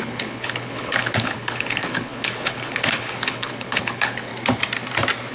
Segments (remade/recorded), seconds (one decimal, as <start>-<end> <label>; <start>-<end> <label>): 0.0-4.3 remade; 4.3-5.3 recorded

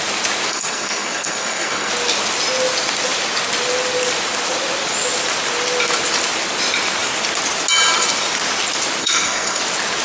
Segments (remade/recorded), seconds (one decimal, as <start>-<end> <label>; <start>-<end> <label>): 0.0-0.5 recorded; 0.5-1.9 remade; 1.9-9.0 recorded; 9.0-9.6 remade; 9.6-10.0 recorded